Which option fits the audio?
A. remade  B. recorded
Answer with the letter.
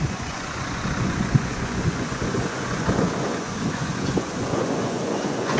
A